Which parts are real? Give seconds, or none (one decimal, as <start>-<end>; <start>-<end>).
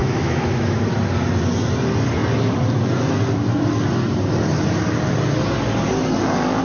0.8-6.6